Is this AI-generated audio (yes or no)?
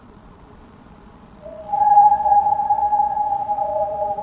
yes